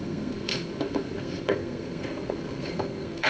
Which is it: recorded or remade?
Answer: remade